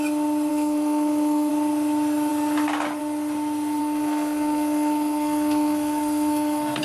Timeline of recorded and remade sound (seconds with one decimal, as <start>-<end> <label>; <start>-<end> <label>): 0.0-0.5 recorded; 0.5-1.5 remade; 1.5-3.8 recorded; 3.8-6.8 remade